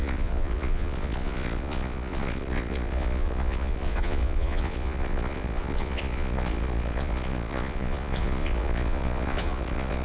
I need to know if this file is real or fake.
fake